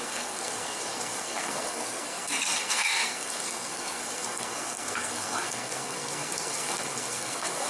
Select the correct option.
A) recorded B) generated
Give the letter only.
B